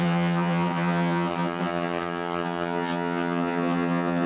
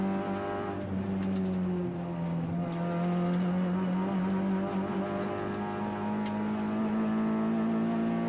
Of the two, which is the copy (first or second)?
first